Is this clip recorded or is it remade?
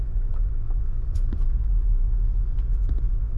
remade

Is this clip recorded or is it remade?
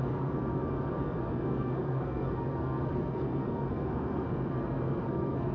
remade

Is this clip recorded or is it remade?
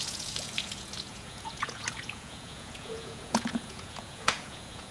remade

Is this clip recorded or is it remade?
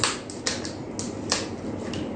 recorded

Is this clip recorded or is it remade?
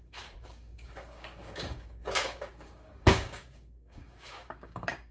remade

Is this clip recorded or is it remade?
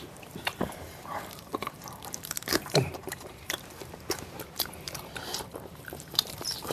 remade